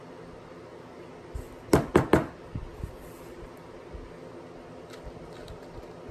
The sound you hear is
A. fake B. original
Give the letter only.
B